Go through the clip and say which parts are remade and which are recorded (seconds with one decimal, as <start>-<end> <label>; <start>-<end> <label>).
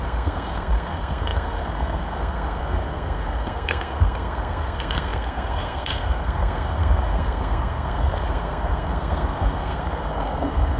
0.0-10.8 remade